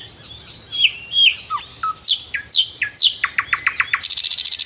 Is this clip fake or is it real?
real